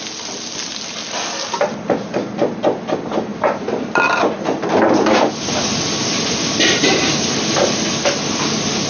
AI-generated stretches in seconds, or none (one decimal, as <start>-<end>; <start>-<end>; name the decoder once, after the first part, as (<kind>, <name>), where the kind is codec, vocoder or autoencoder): none